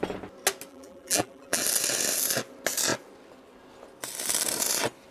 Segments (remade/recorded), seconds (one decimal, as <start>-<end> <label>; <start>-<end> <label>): 0.0-0.7 recorded; 0.7-1.6 remade; 1.6-5.1 recorded